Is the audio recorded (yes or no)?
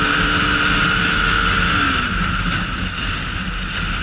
yes